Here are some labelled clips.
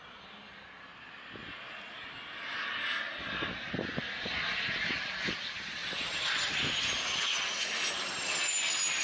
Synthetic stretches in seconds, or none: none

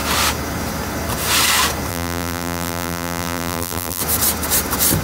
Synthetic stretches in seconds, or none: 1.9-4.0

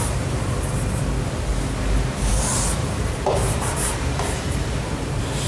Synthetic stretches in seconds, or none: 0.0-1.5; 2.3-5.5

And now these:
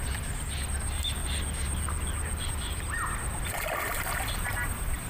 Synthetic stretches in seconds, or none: 0.0-1.2; 2.5-5.1

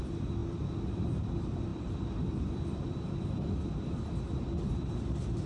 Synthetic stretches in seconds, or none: 0.0-0.4; 0.9-5.5

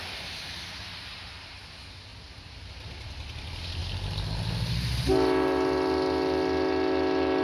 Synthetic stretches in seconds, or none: 2.1-2.6

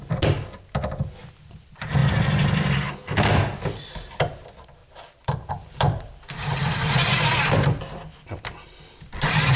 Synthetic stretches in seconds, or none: 4.8-6.9